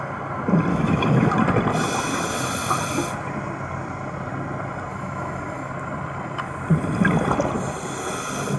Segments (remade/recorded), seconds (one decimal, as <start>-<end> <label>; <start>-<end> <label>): 0.0-0.7 recorded; 0.7-1.3 remade; 1.3-4.9 recorded; 4.9-5.7 remade; 5.7-8.6 recorded